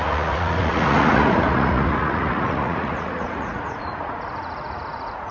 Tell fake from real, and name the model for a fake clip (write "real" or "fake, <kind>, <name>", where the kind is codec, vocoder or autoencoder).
fake, vocoder, Vocos